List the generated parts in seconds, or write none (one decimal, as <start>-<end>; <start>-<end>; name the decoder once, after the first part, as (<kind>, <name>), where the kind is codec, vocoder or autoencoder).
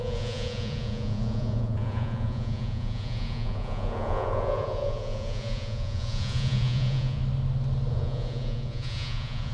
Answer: 0.0-7.2 (vocoder, Vocos); 7.9-9.5